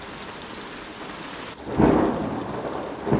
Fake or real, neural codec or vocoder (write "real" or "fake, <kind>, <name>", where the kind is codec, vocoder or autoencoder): real